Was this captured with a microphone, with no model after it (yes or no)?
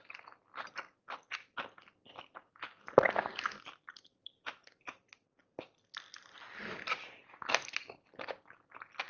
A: yes